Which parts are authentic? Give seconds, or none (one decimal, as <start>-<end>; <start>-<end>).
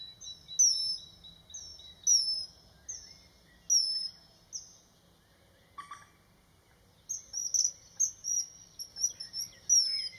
0.0-10.2